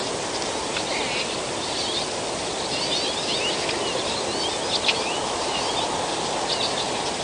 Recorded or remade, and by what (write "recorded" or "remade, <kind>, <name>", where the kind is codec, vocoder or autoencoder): recorded